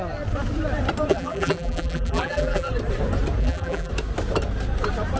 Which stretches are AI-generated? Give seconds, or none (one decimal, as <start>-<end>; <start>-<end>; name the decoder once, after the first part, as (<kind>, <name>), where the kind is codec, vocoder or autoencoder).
1.1-2.7 (vocoder, BigVGAN v2); 3.4-3.9